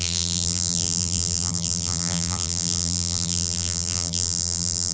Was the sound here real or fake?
fake